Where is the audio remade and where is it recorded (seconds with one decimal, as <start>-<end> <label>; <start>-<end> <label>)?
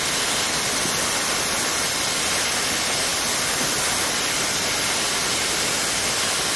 0.0-6.6 recorded